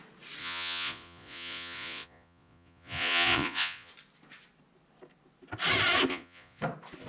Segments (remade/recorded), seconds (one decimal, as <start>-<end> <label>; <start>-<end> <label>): 0.0-0.4 recorded; 0.4-3.9 remade; 3.9-6.1 recorded; 6.1-6.6 remade; 6.6-7.1 recorded